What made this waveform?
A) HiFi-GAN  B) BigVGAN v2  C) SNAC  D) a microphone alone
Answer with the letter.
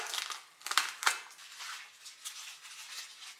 D